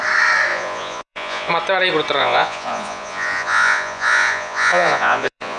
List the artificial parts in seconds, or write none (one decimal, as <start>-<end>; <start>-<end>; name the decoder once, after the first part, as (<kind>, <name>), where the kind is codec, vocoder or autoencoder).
0.5-1.5 (vocoder, Vocos); 2.2-5.6